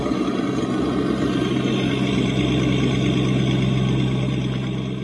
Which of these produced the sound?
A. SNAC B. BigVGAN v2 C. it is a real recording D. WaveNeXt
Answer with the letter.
C